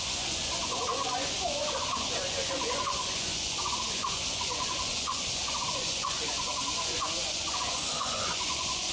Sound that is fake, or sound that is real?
fake